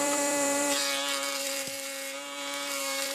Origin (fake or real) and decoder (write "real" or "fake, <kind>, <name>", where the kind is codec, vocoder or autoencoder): fake, vocoder, BigVGAN v2